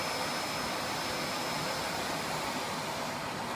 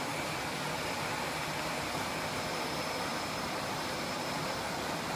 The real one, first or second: first